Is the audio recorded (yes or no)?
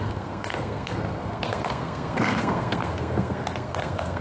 no